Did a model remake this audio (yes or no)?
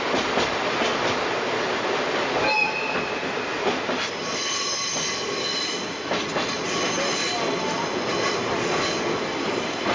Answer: no